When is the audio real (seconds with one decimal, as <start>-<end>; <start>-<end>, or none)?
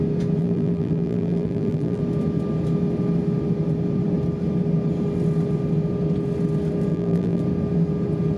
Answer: 0.0-0.4; 2.0-6.9; 7.4-8.4